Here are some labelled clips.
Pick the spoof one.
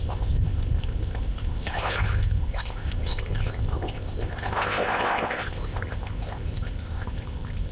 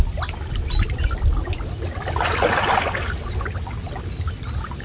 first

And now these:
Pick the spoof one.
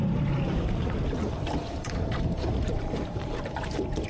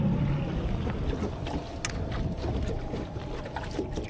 first